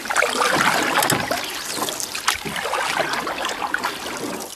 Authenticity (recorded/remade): recorded